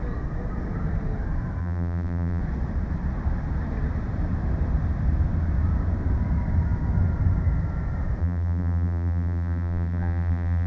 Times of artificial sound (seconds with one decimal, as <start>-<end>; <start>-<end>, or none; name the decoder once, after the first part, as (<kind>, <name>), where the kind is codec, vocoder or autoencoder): 1.6-2.4 (vocoder, BigVGAN v2); 8.2-10.7

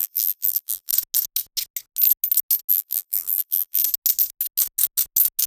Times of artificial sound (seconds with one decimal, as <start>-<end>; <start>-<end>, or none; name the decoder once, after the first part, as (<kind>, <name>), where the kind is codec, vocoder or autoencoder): 0.0-0.9 (vocoder, BigVGAN v2); 2.7-3.8

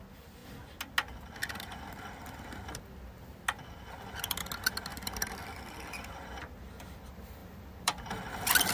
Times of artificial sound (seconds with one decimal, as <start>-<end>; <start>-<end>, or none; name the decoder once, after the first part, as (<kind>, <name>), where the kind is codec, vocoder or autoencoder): 7.4-8.1 (vocoder, BigVGAN v2)

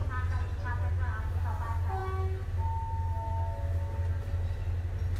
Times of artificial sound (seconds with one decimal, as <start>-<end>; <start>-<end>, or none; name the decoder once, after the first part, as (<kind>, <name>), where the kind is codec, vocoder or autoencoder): 0.0-0.9 (vocoder, BigVGAN v2)

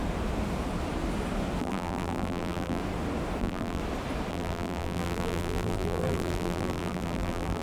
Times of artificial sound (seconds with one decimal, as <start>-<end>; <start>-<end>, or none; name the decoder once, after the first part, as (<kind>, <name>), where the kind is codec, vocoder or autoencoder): 1.6-2.8 (vocoder, BigVGAN v2); 3.4-3.8; 4.3-7.6

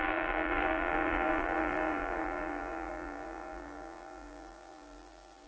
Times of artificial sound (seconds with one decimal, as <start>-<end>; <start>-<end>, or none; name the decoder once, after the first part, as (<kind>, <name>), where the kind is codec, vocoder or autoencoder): 0.0-5.5 (vocoder, BigVGAN v2)

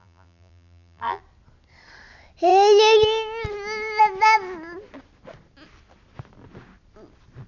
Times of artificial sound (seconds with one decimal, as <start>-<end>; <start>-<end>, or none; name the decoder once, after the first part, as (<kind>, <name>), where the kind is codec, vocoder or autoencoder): 0.0-1.2 (vocoder, BigVGAN v2)

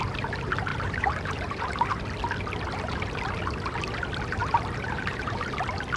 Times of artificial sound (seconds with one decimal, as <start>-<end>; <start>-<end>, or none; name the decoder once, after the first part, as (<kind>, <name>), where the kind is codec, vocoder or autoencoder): 0.7-2.0 (vocoder, BigVGAN v2); 4.4-5.6